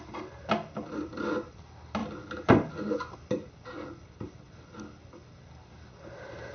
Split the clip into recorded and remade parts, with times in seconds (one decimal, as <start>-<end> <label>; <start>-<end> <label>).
0.0-6.5 recorded